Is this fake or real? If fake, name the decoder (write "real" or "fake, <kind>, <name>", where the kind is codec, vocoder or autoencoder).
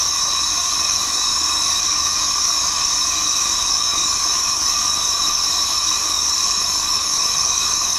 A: fake, codec, DAC